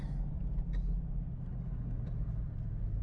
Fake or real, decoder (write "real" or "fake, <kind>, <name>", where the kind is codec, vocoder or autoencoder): real